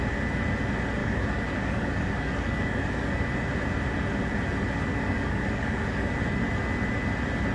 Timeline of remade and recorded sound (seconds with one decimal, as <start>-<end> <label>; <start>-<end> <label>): 0.0-1.0 recorded; 1.0-3.1 remade; 3.1-4.9 recorded; 4.9-6.1 remade; 6.1-7.5 recorded